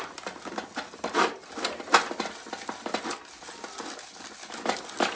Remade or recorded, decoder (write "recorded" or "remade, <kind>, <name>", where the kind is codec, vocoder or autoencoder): recorded